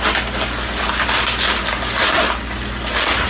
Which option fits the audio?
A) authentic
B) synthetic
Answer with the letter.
A